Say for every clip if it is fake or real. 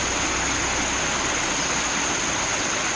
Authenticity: real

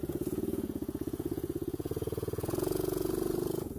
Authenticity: fake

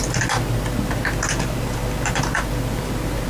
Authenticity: real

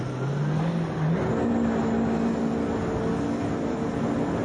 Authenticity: real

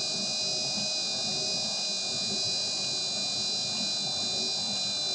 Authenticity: real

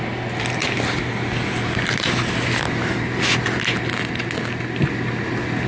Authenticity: real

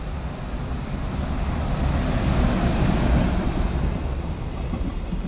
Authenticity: real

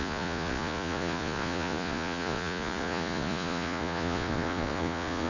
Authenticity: fake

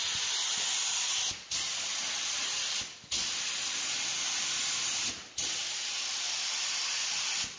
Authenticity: real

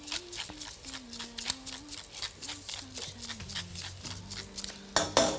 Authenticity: real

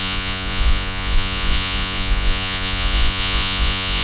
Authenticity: fake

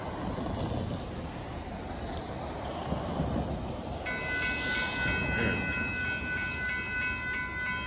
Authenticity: real